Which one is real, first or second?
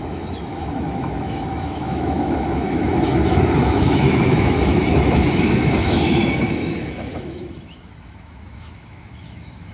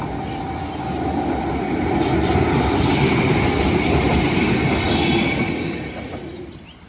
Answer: second